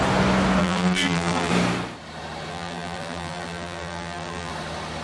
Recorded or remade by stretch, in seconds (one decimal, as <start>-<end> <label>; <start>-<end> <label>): 0.0-0.6 recorded; 0.6-1.5 remade; 1.5-2.5 recorded; 2.5-4.5 remade; 4.5-5.0 recorded

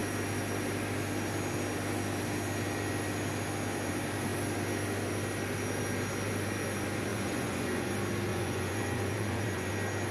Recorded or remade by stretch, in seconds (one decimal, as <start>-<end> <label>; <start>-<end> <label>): 0.0-7.1 recorded; 7.1-7.9 remade; 7.9-8.3 recorded; 8.3-9.7 remade; 9.7-10.1 recorded